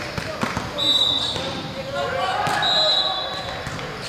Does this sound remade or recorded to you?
recorded